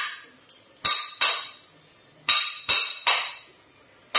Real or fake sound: real